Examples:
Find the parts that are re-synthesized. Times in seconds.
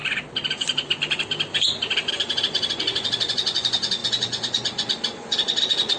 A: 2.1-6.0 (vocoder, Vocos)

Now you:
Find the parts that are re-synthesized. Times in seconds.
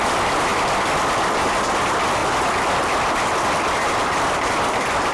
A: none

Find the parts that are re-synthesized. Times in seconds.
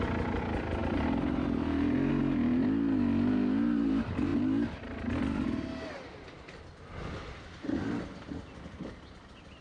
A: none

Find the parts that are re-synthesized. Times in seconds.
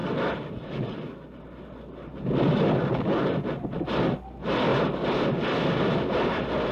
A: none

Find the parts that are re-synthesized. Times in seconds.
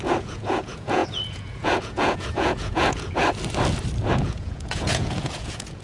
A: 0.0-3.2 (vocoder, Vocos); 4.1-5.8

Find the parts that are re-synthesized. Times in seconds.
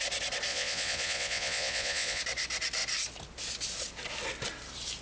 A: 0.5-2.2 (vocoder, Vocos)